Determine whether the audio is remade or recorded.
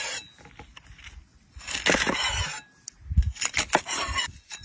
recorded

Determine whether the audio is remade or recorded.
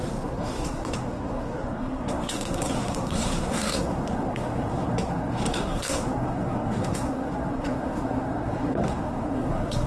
remade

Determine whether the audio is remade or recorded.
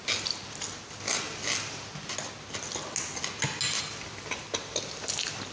recorded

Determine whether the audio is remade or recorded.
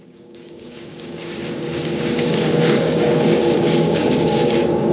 remade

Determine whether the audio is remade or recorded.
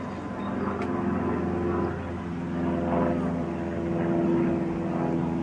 recorded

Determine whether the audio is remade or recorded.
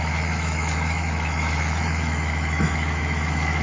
remade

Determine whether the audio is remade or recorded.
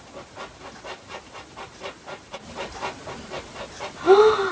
recorded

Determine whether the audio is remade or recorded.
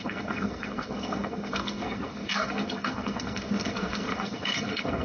remade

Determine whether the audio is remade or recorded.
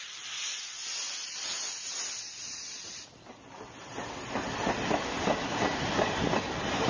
recorded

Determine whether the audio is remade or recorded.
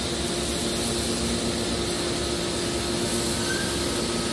recorded